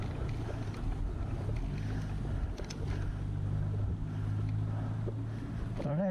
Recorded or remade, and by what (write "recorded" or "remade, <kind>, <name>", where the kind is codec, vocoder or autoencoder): recorded